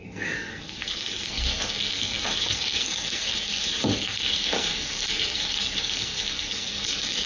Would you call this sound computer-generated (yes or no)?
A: yes